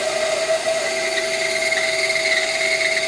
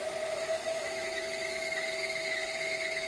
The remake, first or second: second